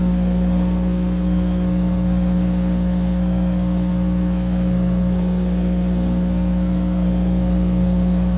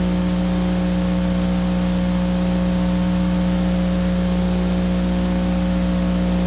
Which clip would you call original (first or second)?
second